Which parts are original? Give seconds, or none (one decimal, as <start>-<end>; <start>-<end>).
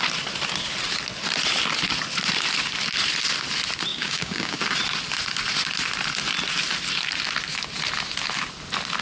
0.0-3.9; 4.6-9.0